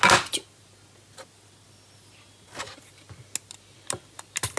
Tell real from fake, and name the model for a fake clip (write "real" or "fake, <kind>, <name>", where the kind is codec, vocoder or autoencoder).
real